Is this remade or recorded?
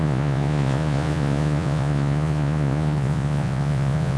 remade